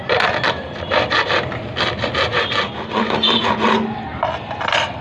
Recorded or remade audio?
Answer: recorded